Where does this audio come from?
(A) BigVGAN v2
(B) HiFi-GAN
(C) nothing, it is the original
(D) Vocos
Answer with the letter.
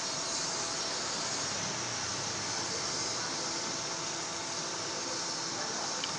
C